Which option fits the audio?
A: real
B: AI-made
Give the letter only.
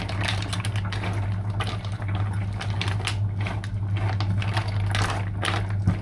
A